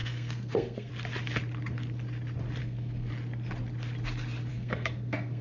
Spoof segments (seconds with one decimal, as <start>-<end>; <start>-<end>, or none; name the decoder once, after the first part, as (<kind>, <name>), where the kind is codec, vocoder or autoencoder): 0.0-0.9 (codec, SNAC); 2.6-3.1; 4.5-5.4